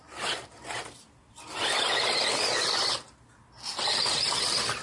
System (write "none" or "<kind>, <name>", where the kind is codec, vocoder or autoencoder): vocoder, BigVGAN v2